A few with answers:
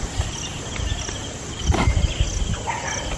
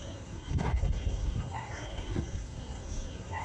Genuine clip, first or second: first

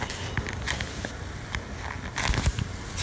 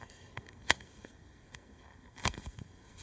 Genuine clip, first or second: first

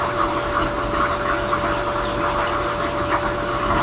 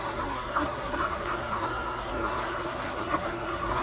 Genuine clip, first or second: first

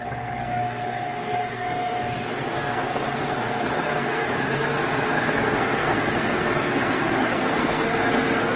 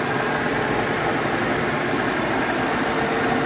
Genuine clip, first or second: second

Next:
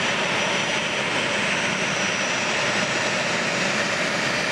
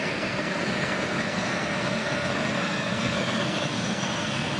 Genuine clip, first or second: first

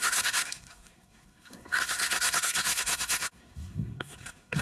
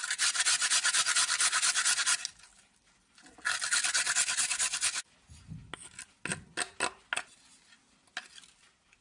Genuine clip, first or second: second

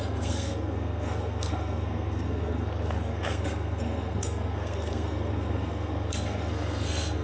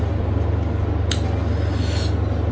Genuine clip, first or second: second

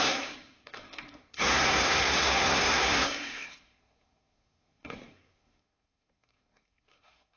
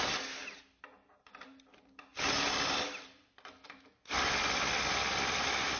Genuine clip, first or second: second